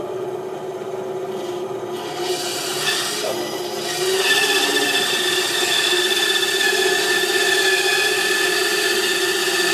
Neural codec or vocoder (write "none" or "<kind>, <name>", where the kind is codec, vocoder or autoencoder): none